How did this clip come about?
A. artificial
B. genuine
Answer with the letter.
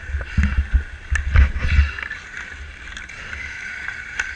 B